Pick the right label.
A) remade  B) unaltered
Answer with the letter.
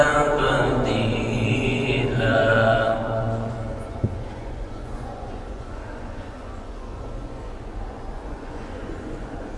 A